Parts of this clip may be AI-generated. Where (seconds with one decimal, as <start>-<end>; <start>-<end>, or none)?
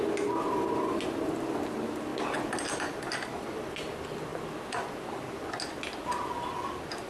none